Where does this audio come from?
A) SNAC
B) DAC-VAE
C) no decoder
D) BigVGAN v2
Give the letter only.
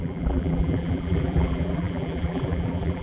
D